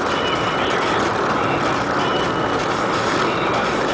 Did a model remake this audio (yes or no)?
no